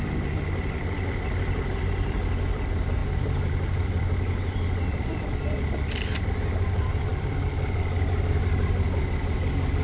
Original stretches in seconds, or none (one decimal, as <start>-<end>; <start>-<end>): 0.0-3.0; 5.3-7.1; 7.9-9.8

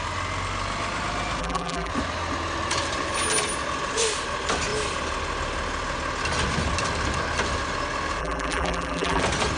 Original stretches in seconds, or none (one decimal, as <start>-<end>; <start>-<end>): 0.0-1.4; 1.9-8.2; 9.2-9.6

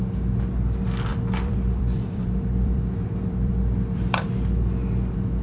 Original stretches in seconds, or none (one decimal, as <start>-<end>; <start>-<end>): 0.0-1.1; 4.3-5.4

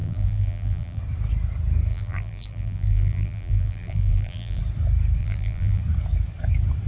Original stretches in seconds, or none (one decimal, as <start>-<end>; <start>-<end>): 1.0-1.9; 4.6-5.2; 5.8-6.9

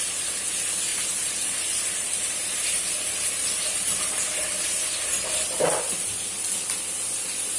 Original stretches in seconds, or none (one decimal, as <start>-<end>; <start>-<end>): 0.0-0.9; 4.8-7.6

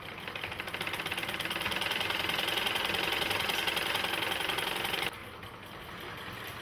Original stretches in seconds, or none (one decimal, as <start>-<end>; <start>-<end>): 0.0-6.6